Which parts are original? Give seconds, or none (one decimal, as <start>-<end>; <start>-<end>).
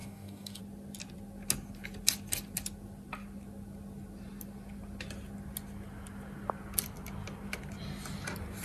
0.6-8.6